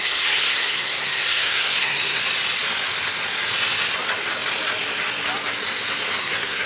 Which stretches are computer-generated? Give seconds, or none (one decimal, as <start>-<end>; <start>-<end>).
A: 0.0-2.2; 6.2-6.7